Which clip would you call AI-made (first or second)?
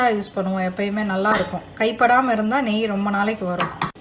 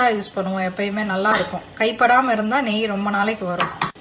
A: second